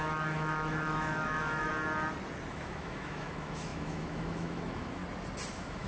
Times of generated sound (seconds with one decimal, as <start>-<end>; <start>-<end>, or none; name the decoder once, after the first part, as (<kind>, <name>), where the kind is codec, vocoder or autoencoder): 0.0-1.7 (autoencoder, DAC-VAE); 2.5-5.0; 5.5-5.9